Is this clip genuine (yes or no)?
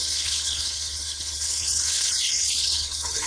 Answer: no